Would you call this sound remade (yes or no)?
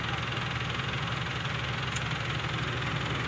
no